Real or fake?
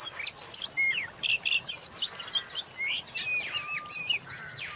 real